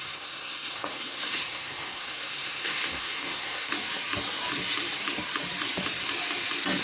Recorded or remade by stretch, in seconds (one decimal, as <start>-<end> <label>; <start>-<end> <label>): 0.0-3.7 remade; 3.7-6.8 recorded